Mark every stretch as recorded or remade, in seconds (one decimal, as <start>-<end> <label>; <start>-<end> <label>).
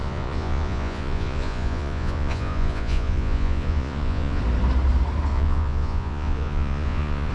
0.0-4.4 remade; 4.4-5.3 recorded; 5.3-7.3 remade